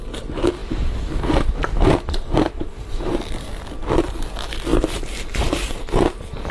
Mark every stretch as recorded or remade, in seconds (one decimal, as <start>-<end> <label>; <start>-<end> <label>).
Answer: 0.0-0.6 recorded; 0.6-3.2 remade; 3.2-6.5 recorded